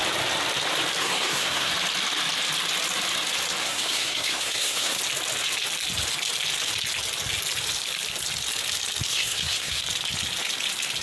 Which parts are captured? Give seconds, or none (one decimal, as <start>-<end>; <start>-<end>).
0.0-1.0; 1.7-3.6; 5.0-9.1; 9.8-11.0